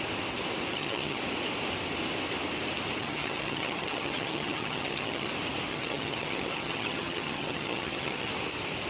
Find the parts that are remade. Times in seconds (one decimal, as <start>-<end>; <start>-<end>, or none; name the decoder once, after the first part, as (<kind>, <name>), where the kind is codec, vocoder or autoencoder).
0.7-1.2 (vocoder, HiFi-GAN); 3.0-5.3; 5.7-8.3

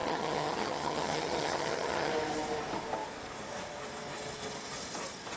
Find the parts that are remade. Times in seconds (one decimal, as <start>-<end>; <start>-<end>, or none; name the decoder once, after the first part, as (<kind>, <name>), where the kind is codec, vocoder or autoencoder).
0.0-2.1 (vocoder, HiFi-GAN)